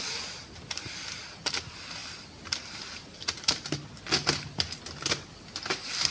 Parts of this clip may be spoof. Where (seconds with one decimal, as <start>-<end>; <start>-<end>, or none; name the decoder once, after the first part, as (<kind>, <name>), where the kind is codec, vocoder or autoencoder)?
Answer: 2.0-6.1 (vocoder, BigVGAN v2)